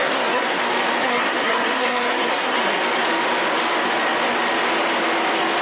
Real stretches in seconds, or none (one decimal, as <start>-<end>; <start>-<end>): 0.6-1.0; 2.8-5.6